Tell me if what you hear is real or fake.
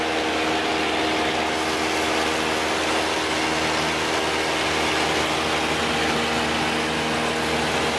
real